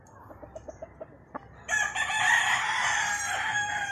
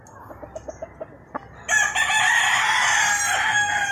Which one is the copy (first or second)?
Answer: first